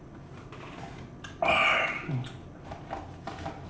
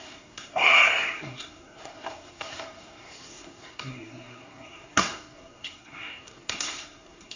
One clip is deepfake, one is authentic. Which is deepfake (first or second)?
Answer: second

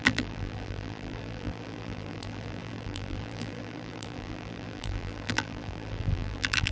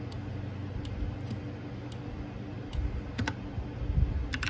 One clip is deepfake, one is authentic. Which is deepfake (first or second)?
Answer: first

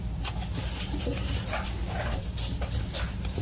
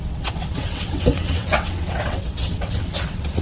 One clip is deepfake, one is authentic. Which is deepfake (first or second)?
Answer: second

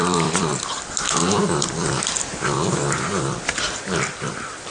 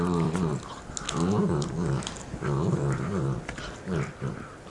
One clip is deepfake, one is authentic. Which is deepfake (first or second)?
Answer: first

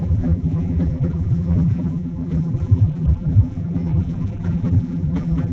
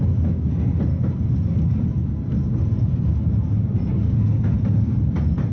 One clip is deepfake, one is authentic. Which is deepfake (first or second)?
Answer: first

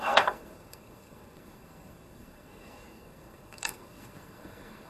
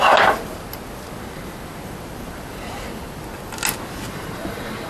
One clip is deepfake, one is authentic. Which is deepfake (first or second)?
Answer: first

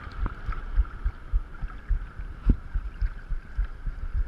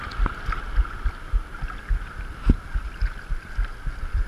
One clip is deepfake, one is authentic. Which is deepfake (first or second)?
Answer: first